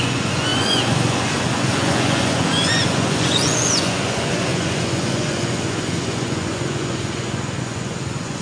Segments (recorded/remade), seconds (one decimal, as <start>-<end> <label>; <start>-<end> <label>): 0.0-8.4 remade